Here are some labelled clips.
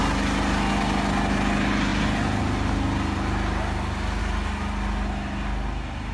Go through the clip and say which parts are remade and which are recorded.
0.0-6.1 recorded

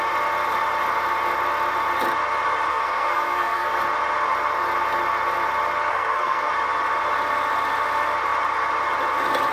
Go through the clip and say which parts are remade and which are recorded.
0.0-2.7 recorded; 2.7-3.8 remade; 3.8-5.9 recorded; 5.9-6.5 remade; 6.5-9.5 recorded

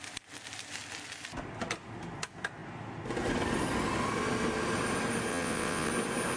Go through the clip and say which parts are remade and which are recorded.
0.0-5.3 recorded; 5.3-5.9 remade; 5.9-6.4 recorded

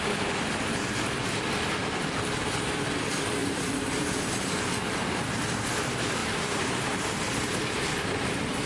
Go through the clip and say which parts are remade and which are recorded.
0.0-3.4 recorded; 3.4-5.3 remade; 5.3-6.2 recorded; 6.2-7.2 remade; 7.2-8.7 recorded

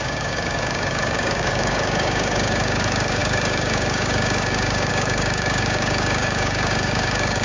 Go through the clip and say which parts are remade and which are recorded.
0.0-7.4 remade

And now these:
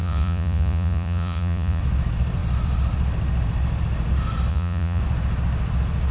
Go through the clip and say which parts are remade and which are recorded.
0.0-1.8 remade; 1.8-4.5 recorded; 4.5-5.0 remade; 5.0-6.1 recorded

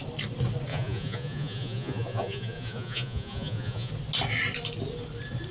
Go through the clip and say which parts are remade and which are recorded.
0.0-0.7 recorded; 0.7-3.9 remade; 3.9-5.5 recorded